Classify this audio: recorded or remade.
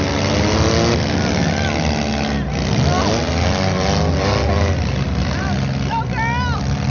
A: recorded